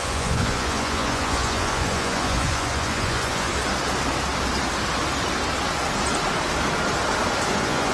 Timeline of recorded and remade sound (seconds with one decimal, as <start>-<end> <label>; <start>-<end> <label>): 0.0-3.5 remade; 3.5-7.5 recorded; 7.5-7.9 remade